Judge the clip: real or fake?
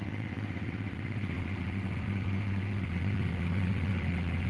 fake